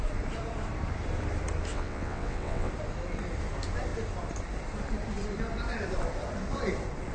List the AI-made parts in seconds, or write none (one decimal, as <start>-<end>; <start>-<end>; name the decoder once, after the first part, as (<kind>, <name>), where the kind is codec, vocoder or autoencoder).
1.7-2.7 (vocoder, WaveNeXt)